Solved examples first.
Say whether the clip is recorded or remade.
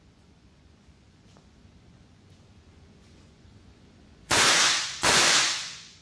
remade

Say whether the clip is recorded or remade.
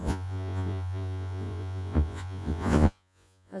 remade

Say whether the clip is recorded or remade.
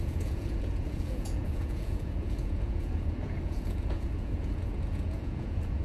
remade